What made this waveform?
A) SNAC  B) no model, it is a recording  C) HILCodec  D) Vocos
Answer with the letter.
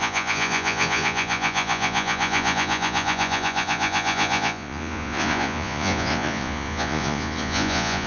D